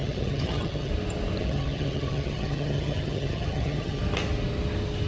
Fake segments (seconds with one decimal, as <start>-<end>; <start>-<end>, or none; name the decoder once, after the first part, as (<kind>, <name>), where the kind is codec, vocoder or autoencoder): 0.0-0.9 (vocoder, HiFi-GAN); 1.4-4.0